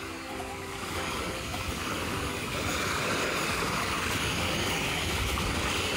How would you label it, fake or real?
fake